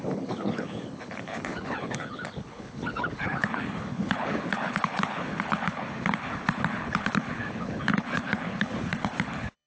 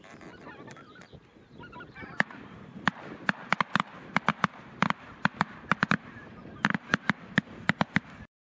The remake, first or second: first